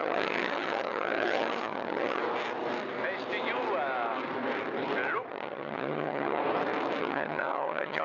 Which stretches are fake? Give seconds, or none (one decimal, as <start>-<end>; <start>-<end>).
0.0-2.2; 5.3-6.4; 7.0-8.0